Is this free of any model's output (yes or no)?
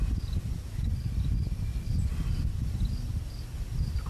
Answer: yes